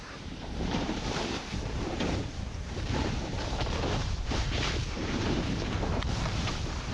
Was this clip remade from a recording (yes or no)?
yes